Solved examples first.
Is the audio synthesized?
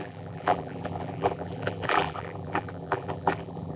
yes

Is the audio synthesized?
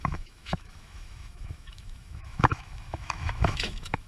yes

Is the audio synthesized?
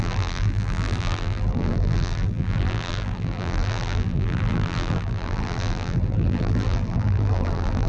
yes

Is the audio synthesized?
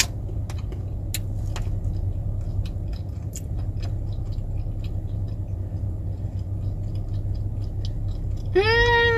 no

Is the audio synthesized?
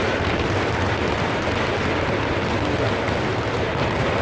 no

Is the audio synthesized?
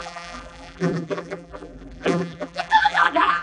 yes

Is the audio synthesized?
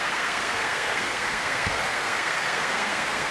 yes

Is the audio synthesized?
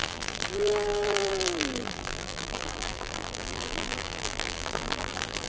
yes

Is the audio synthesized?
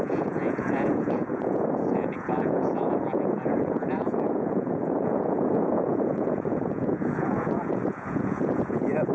yes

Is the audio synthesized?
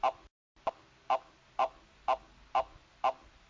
no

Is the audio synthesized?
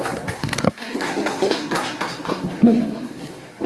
yes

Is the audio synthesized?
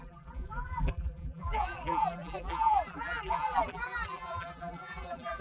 yes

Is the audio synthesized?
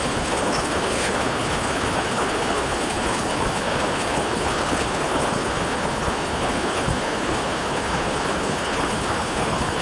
yes